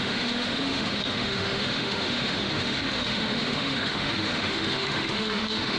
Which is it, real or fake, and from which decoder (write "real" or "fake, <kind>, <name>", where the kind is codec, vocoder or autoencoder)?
fake, autoencoder, DAC-VAE